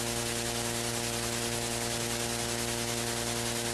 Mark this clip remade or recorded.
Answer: recorded